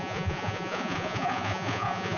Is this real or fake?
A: fake